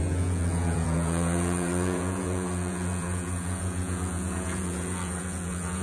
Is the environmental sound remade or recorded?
remade